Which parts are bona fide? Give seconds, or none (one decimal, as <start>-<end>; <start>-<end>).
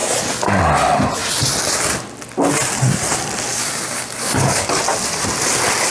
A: 0.0-3.5; 4.8-5.9